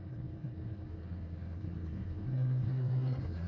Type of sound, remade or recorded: remade